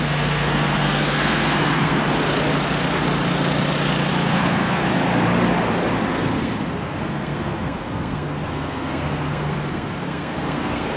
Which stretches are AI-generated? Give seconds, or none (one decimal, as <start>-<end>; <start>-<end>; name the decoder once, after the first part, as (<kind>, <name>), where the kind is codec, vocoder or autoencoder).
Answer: 0.0-2.0 (codec, SNAC); 4.1-4.8; 6.1-11.0